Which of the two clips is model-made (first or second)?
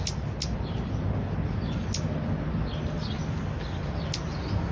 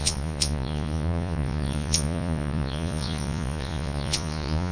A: second